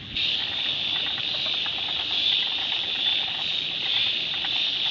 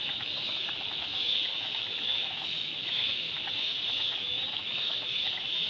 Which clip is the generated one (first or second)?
second